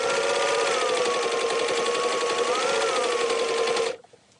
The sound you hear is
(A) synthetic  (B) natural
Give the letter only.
B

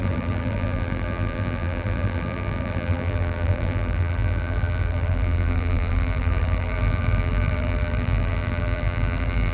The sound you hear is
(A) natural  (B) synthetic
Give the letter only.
B